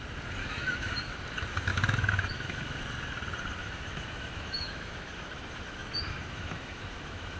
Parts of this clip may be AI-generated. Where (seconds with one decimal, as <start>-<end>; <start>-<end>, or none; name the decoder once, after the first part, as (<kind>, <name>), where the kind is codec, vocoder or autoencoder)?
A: 0.4-1.2 (autoencoder, DAC-VAE); 1.7-2.8; 3.6-7.4